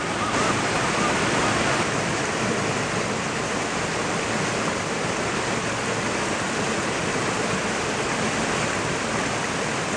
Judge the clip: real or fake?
real